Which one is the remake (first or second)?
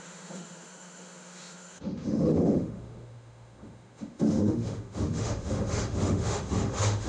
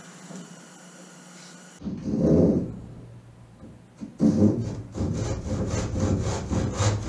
first